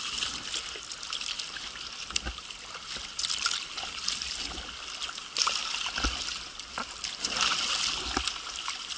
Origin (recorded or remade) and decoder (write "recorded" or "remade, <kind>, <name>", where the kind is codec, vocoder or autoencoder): recorded